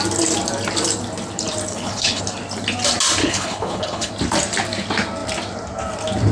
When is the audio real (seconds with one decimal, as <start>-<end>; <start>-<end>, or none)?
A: 0.0-1.7; 2.2-3.2; 4.1-6.3